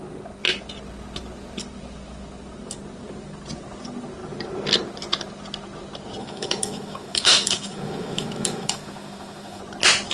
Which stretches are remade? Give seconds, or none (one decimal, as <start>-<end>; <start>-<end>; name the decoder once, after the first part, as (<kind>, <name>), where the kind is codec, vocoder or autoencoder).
6.2-9.6 (autoencoder, DAC-VAE)